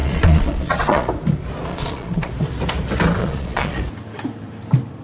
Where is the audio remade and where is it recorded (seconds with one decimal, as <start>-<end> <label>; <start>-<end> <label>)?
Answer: 0.0-1.1 remade; 1.1-1.7 recorded; 1.7-2.3 remade; 2.3-3.2 recorded; 3.2-3.8 remade; 3.8-5.0 recorded